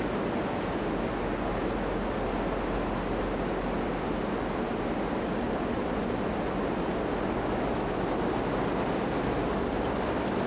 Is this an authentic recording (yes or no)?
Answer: yes